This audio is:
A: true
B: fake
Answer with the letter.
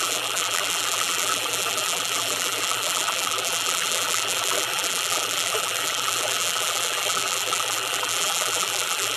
B